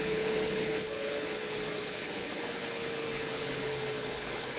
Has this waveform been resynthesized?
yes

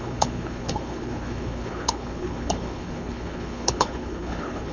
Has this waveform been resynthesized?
yes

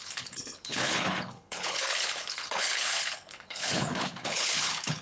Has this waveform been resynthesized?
yes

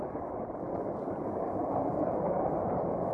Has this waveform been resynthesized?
no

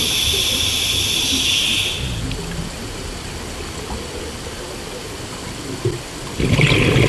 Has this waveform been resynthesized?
no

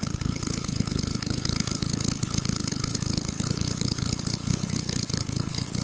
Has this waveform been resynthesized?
yes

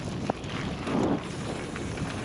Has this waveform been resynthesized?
no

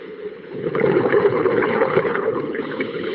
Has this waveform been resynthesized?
yes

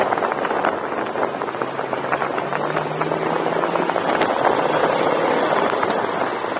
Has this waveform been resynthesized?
no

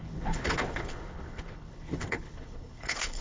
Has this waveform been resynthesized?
yes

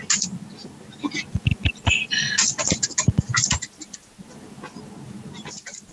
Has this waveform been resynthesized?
no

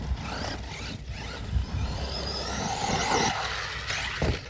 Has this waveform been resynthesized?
no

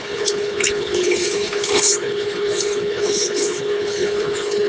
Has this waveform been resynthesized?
yes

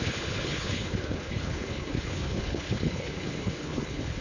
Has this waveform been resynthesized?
yes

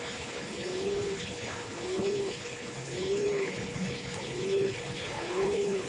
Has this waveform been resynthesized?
yes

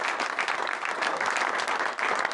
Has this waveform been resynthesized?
no